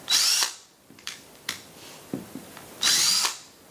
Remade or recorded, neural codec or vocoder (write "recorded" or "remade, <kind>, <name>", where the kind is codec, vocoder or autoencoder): remade, vocoder, BigVGAN v2